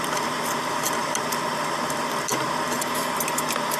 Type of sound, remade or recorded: recorded